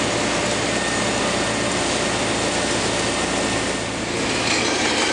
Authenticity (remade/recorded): recorded